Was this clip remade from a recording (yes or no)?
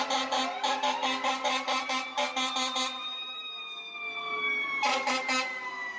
no